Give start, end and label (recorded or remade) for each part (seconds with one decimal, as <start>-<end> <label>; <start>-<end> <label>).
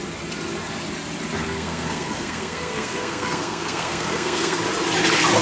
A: 0.0-1.4 recorded; 1.4-4.6 remade; 4.6-5.4 recorded